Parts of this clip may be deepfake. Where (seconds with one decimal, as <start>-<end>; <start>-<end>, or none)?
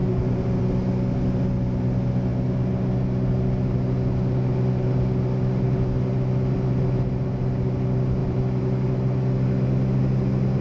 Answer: none